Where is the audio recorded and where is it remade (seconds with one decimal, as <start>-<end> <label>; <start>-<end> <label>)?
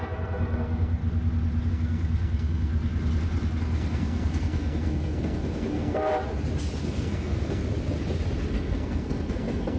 0.0-1.0 remade; 1.0-1.7 recorded; 1.7-2.7 remade; 2.7-3.6 recorded; 3.6-6.1 remade; 6.1-6.8 recorded; 6.8-7.6 remade; 7.6-8.5 recorded; 8.5-9.8 remade